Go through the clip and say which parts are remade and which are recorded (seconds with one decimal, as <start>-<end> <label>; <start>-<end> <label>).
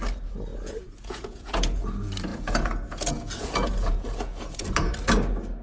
0.0-0.5 recorded; 0.5-1.9 remade; 1.9-2.3 recorded; 2.3-4.9 remade; 4.9-5.6 recorded